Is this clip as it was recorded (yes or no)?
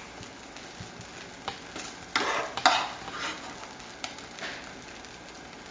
yes